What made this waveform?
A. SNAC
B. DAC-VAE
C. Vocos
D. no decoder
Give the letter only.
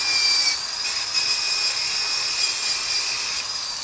D